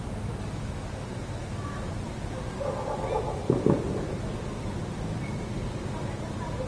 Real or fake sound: real